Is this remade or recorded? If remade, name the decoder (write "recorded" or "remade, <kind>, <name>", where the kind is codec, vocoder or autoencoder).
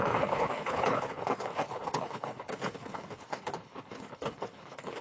remade, codec, HILCodec